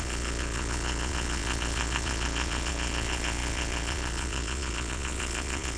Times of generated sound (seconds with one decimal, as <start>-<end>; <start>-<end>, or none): 0.0-5.8